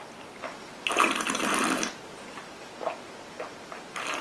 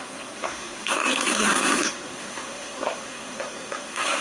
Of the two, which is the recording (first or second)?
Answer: first